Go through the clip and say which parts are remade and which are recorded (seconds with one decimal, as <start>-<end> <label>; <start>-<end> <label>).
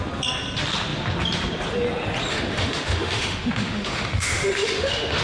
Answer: 0.0-2.3 recorded; 2.3-5.2 remade